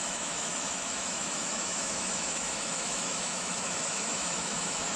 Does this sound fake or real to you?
fake